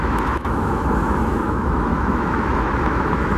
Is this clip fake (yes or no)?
yes